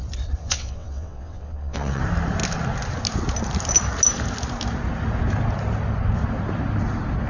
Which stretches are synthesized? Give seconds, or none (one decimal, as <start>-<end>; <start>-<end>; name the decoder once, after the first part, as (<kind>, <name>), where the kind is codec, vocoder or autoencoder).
0.4-2.0 (vocoder, WaveNeXt)